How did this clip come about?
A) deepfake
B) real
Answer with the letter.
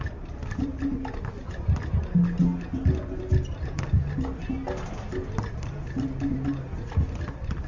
B